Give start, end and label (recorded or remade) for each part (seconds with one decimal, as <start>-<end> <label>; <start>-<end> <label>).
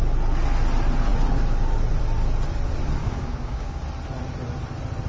0.0-3.0 recorded; 3.0-3.8 remade; 3.8-5.1 recorded